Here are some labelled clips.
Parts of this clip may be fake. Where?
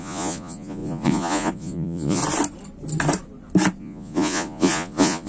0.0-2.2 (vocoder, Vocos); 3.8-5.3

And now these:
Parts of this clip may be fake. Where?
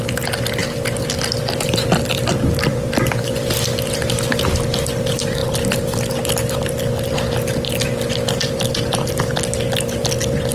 none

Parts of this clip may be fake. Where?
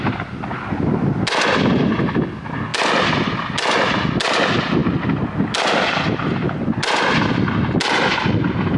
none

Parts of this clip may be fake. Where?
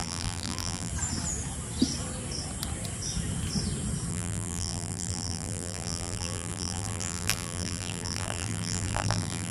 0.0-0.9 (vocoder, BigVGAN v2); 4.1-9.5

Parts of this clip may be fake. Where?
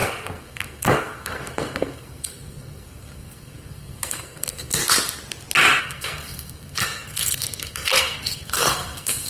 0.0-4.8 (codec, SNAC); 5.8-9.3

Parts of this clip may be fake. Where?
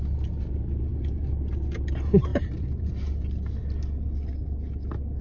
2.3-3.0 (vocoder, BigVGAN v2)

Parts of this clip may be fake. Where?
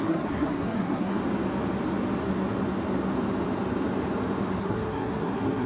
0.0-1.2 (codec, SNAC); 4.6-5.7